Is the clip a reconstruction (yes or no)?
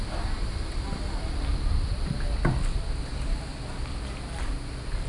no